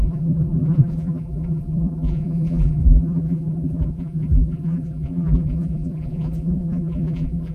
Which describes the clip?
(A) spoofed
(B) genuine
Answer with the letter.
A